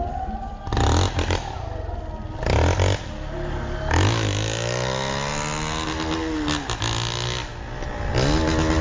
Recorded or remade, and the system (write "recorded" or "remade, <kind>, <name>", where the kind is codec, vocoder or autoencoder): recorded